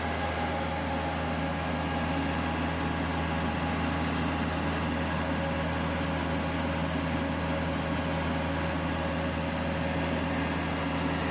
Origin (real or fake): real